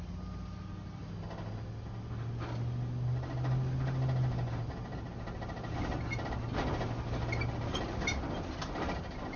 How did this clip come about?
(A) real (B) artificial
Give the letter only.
A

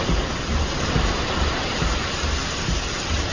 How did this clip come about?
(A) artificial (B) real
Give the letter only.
B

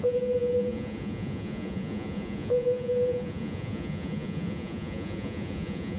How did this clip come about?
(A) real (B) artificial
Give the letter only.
B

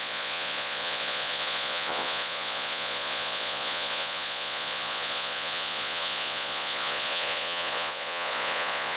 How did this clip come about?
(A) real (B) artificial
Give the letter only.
B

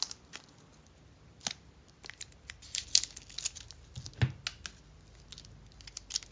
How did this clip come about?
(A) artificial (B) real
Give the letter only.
B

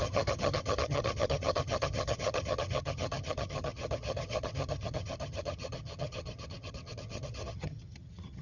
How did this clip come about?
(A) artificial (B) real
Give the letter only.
A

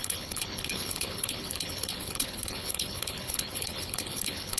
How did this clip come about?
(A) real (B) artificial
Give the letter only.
B